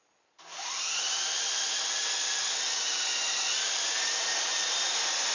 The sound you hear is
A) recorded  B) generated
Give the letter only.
A